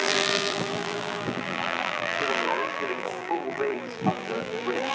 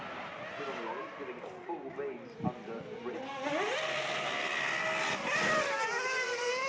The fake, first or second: first